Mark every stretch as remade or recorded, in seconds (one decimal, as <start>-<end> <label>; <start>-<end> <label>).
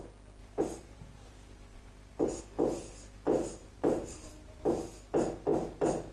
0.0-0.4 recorded; 0.4-2.4 remade; 2.4-3.6 recorded; 3.6-4.9 remade; 4.9-6.1 recorded